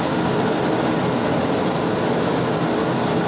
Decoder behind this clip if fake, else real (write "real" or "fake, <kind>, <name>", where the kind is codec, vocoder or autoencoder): real